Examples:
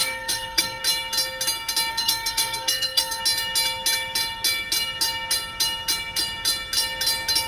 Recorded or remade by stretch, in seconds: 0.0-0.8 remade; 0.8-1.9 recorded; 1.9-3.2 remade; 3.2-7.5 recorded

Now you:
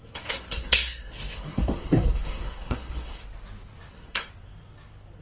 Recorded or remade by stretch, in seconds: 0.0-3.2 remade; 3.2-3.9 recorded; 3.9-4.3 remade; 4.3-5.2 recorded

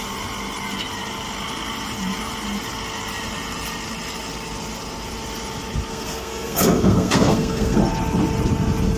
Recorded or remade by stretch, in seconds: 0.0-5.9 recorded; 5.9-7.8 remade; 7.8-9.0 recorded

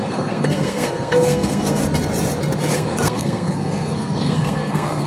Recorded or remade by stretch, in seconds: 0.0-1.8 remade; 1.8-2.6 recorded; 2.6-5.1 remade

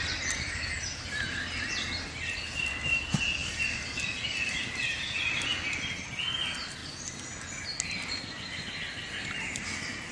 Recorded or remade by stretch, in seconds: 0.0-10.1 recorded

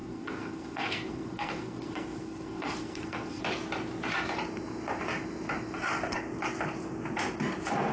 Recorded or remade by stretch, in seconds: 0.0-3.4 remade; 3.4-7.9 recorded